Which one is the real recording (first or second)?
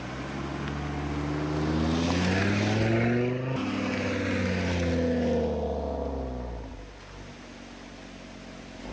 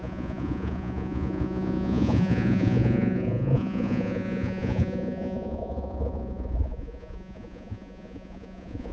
first